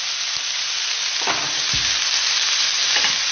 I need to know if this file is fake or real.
real